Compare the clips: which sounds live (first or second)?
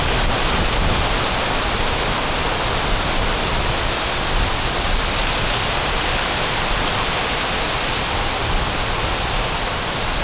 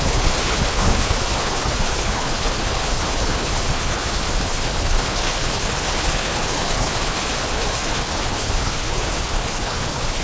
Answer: first